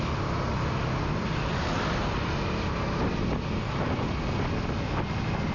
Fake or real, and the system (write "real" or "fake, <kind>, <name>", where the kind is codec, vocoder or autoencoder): real